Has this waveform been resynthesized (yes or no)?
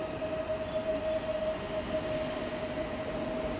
no